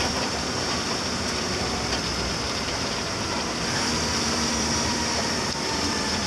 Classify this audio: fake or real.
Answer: fake